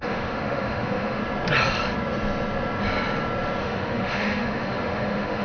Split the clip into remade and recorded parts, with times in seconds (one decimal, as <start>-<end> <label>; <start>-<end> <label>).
0.0-1.2 remade; 1.2-3.6 recorded; 3.6-5.4 remade

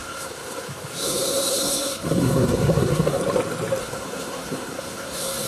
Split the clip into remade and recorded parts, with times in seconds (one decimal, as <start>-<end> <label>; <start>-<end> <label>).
0.0-3.2 remade; 3.2-3.8 recorded; 3.8-5.5 remade

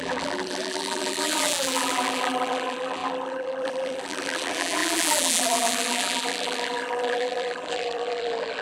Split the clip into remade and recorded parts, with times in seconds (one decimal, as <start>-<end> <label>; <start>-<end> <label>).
0.0-8.6 remade

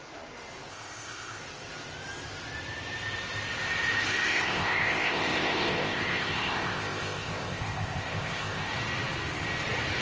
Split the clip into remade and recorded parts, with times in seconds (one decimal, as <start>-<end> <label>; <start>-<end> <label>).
0.0-0.7 recorded; 0.7-1.4 remade; 1.4-4.1 recorded; 4.1-8.7 remade; 8.7-10.0 recorded

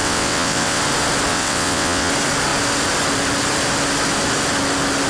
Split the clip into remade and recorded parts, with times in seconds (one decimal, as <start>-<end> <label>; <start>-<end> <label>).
0.0-0.8 remade; 0.8-1.3 recorded; 1.3-2.1 remade; 2.1-5.1 recorded

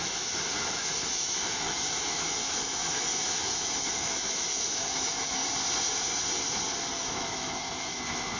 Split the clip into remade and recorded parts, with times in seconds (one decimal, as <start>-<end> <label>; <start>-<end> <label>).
0.0-5.4 remade; 5.4-7.0 recorded; 7.0-8.4 remade

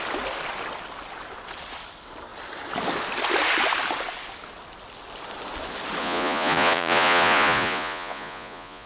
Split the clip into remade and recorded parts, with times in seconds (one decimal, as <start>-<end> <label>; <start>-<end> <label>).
0.0-6.0 recorded; 6.0-8.9 remade

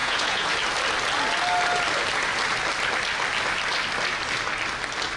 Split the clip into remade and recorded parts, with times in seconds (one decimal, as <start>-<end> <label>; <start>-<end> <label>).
0.0-0.5 remade; 0.5-5.2 recorded